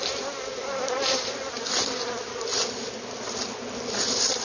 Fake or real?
real